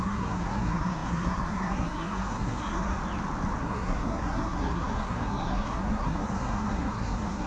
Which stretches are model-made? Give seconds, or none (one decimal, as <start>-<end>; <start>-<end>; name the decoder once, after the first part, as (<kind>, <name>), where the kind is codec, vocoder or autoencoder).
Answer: 0.0-3.0 (codec, SNAC); 3.6-7.5